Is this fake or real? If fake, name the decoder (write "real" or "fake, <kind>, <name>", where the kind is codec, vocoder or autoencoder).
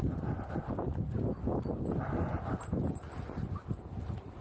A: real